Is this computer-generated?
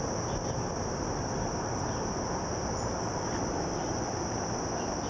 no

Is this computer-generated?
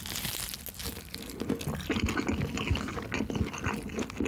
no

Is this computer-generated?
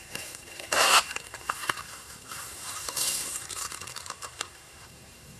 yes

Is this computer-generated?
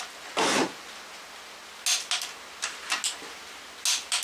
no